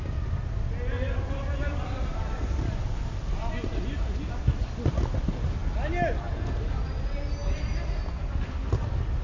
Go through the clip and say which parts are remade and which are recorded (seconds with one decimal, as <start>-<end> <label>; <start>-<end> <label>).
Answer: 0.0-9.2 recorded

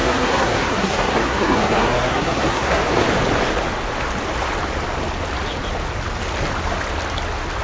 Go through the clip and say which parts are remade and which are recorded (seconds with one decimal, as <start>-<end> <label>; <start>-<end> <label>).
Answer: 0.0-2.8 remade; 2.8-7.6 recorded

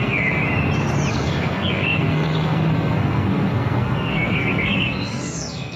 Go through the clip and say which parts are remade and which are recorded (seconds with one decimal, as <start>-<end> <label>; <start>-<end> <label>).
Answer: 0.0-0.4 remade; 0.4-1.1 recorded; 1.1-5.8 remade

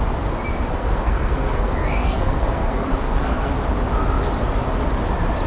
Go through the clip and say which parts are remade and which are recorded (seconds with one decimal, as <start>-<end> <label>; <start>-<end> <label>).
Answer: 0.0-0.7 recorded; 0.7-3.5 remade; 3.5-5.5 recorded

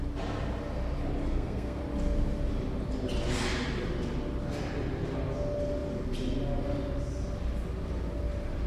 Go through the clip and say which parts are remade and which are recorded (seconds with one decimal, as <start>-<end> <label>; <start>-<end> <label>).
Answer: 0.0-1.2 recorded; 1.2-1.8 remade; 1.8-8.7 recorded

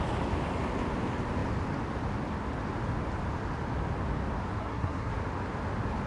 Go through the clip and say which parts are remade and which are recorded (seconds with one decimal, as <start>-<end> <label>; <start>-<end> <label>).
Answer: 0.0-4.6 recorded; 4.6-5.1 remade; 5.1-6.1 recorded